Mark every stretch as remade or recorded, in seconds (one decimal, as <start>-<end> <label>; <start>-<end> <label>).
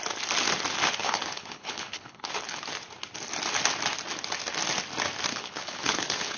0.0-1.0 recorded; 1.0-2.6 remade; 2.6-5.3 recorded; 5.3-6.4 remade